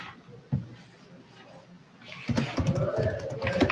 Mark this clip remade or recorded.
recorded